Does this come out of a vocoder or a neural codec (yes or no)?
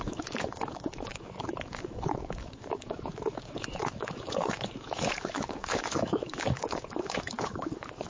yes